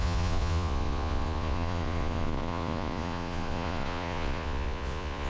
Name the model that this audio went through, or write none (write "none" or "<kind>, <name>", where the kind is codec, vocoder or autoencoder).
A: vocoder, Vocos